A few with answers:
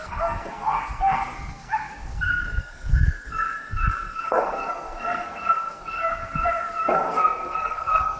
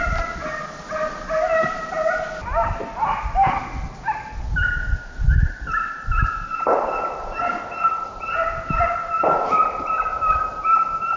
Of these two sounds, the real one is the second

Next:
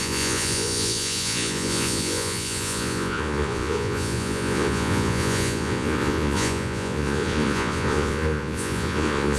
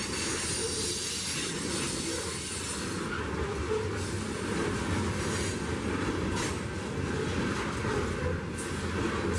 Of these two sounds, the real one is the second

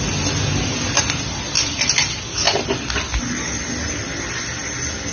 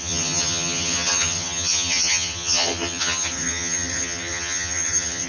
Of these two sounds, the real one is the first